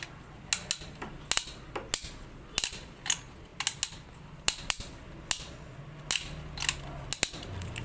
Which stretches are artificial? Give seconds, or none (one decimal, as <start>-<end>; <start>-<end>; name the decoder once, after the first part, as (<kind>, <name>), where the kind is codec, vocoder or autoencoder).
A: none